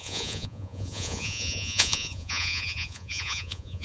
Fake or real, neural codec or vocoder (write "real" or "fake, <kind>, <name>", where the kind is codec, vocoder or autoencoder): fake, vocoder, Vocos